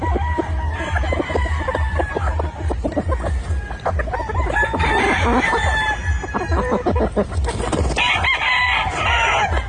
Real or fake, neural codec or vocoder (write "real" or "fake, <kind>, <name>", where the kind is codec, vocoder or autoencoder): real